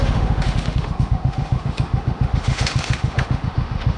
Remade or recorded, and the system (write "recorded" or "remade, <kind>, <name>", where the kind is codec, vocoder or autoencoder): remade, autoencoder, DAC-VAE